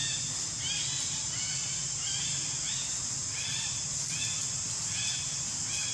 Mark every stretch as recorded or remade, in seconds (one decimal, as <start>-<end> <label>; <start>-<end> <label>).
0.0-5.9 recorded